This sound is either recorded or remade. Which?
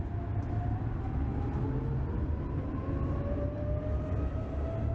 recorded